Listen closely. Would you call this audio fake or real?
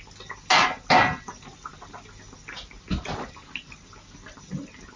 real